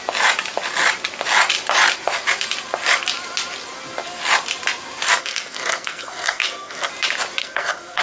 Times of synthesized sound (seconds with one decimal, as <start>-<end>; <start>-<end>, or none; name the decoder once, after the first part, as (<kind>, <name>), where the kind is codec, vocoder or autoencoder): 5.2-6.9 (codec, SNAC); 7.4-8.0